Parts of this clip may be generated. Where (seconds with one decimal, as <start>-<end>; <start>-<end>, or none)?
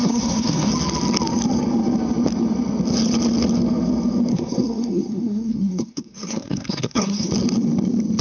0.0-0.7; 4.3-7.3